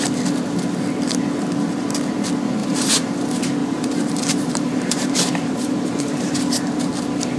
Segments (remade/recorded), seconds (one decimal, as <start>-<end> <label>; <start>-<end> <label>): 0.0-2.6 recorded; 2.6-3.1 remade; 3.1-3.6 recorded; 3.6-6.9 remade; 6.9-7.4 recorded